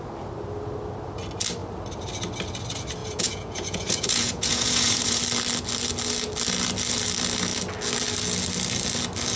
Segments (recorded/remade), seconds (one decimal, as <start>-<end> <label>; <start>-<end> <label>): 0.0-3.0 recorded; 3.0-5.2 remade; 5.2-9.4 recorded